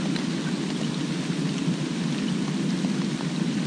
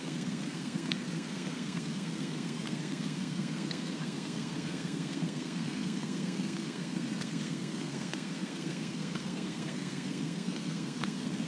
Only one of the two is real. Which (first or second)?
first